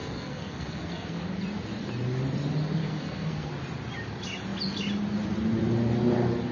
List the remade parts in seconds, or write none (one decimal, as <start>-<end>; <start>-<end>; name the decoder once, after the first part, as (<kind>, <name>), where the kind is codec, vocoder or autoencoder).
0.0-1.2 (codec, SNAC); 2.8-3.5